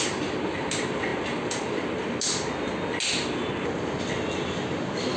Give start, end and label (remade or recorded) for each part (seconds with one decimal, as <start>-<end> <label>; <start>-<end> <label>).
0.0-5.2 recorded